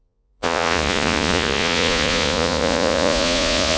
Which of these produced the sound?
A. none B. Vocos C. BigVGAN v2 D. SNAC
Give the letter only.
B